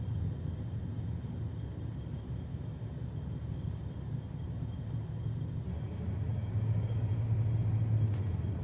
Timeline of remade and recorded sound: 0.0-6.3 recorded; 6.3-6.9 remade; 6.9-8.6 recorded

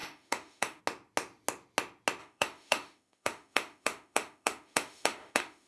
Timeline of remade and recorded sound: 0.0-0.8 remade; 0.8-2.2 recorded; 2.2-5.7 remade

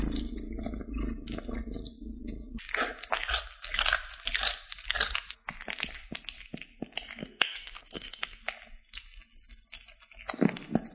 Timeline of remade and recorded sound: 0.0-7.2 recorded; 7.2-8.4 remade; 8.4-10.9 recorded